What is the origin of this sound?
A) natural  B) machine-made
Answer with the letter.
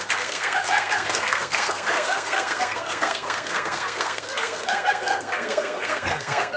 B